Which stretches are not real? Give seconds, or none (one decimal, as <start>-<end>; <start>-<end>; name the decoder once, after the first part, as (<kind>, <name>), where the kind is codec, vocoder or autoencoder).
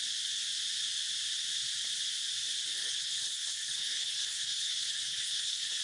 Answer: 2.7-5.8 (codec, HILCodec)